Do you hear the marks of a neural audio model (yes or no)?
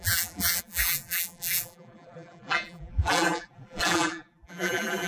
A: yes